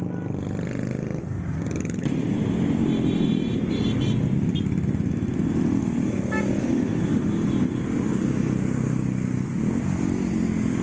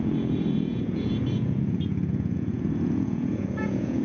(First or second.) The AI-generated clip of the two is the second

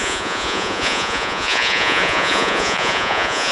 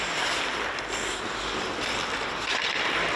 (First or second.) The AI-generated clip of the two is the first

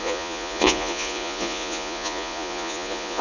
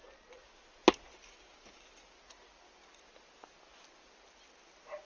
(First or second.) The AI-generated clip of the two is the first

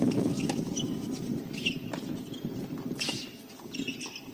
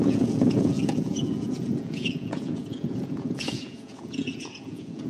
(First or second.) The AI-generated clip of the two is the second